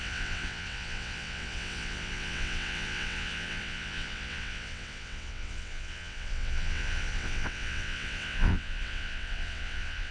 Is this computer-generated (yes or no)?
yes